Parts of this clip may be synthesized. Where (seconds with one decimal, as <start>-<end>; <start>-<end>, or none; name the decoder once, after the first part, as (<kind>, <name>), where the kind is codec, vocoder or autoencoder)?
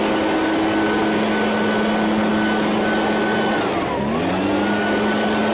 none